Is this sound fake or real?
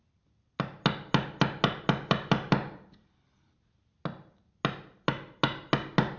real